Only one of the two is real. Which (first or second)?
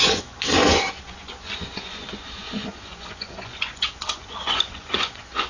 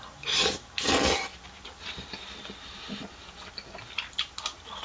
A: second